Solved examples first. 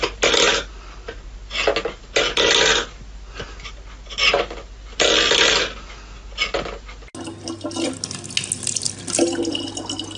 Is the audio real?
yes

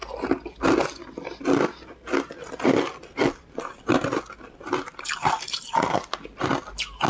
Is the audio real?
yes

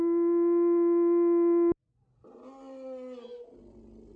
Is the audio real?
yes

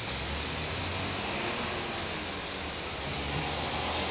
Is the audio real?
yes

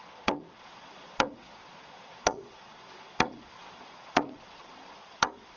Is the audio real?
no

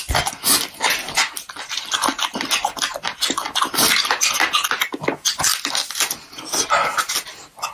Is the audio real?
yes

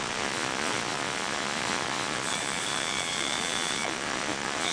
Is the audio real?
no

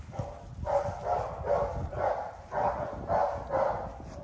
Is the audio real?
yes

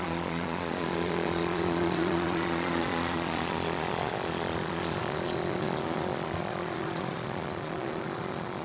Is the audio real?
no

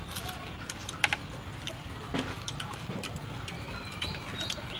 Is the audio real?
yes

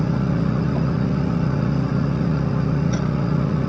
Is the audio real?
no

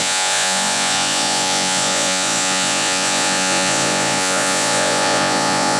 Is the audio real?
no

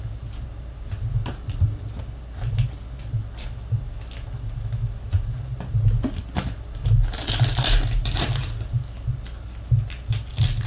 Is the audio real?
yes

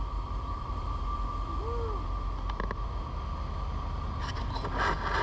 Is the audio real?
yes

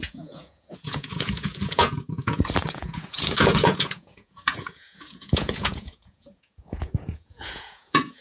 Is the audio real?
no